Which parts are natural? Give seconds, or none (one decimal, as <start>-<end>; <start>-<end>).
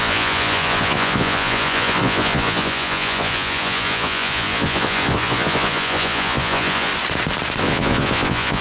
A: 6.9-7.6